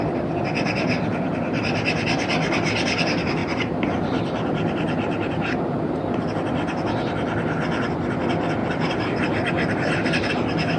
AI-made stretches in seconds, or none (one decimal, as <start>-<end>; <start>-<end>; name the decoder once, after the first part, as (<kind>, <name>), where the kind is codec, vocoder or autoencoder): 3.4-6.0 (vocoder, BigVGAN v2); 8.6-10.3